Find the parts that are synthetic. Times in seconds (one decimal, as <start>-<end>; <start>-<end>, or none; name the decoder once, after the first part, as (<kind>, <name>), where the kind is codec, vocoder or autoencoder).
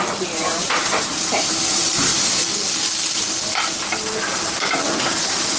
0.0-2.1 (vocoder, BigVGAN v2); 4.9-5.6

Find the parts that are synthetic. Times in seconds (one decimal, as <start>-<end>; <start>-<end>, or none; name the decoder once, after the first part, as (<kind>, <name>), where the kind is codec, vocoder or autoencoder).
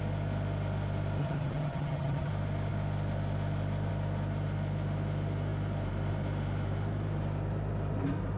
1.2-2.3 (vocoder, HiFi-GAN)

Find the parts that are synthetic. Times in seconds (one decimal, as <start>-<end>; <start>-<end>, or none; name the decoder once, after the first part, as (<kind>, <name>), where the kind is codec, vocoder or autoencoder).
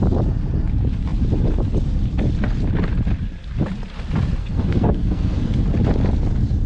4.4-5.6 (codec, SNAC)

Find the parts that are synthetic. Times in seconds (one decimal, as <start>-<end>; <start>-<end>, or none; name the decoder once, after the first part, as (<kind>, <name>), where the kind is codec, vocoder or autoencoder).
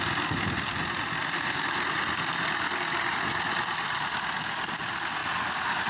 none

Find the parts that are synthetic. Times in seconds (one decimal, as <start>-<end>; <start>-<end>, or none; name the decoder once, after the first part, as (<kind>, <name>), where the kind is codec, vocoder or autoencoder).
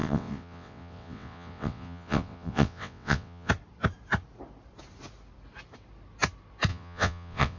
0.0-3.5 (vocoder, WaveNeXt); 6.7-7.6